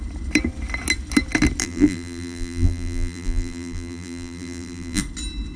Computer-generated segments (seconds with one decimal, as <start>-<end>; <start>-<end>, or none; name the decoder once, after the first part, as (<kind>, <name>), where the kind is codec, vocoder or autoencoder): 1.6-5.0 (vocoder, BigVGAN v2)